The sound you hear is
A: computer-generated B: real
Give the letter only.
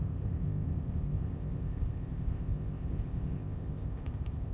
A